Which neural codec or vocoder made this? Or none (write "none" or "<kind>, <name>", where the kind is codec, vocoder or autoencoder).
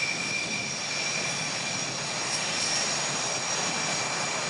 none